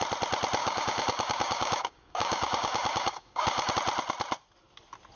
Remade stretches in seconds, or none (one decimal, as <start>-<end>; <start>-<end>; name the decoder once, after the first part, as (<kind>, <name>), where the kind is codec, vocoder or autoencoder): 0.6-3.7 (codec, DAC)

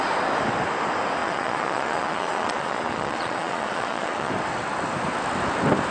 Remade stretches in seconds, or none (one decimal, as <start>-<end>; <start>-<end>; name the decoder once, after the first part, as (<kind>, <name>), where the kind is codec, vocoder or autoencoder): 1.2-4.3 (vocoder, Vocos)

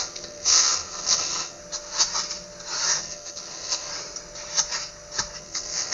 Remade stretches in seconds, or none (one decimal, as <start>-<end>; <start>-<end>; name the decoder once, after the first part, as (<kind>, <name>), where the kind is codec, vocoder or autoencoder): 0.0-1.6 (codec, SNAC); 3.0-3.9; 5.4-5.9

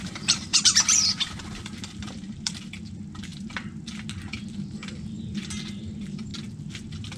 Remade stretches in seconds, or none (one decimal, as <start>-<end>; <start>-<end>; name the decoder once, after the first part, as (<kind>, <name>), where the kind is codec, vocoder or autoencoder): 0.0-2.6 (vocoder, BigVGAN v2)

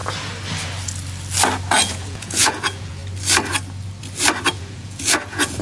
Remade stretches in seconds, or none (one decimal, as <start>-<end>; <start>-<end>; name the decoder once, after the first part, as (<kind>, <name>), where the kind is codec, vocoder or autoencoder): 1.8-3.0 (vocoder, Vocos); 4.5-5.6